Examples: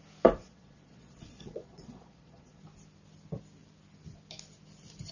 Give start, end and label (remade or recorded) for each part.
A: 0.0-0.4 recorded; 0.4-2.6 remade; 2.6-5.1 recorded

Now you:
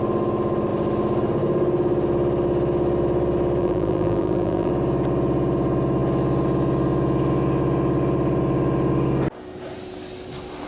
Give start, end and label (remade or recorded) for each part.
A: 0.0-3.6 recorded; 3.6-4.7 remade; 4.7-10.7 recorded

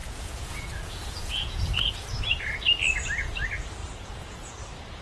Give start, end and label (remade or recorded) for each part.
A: 0.0-1.9 remade; 1.9-3.8 recorded; 3.8-4.5 remade; 4.5-5.0 recorded

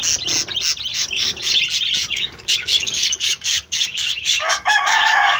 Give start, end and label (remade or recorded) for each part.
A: 0.0-0.9 recorded; 0.9-1.6 remade; 1.6-2.0 recorded; 2.0-5.4 remade

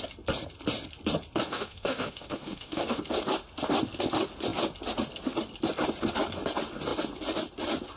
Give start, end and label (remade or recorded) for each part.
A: 0.0-1.5 recorded; 1.5-3.0 remade; 3.0-8.0 recorded

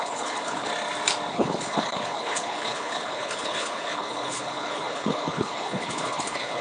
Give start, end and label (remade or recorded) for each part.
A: 0.0-0.7 remade; 0.7-1.3 recorded; 1.3-6.6 remade